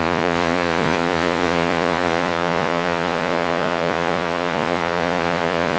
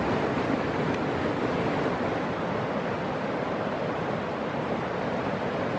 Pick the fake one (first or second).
first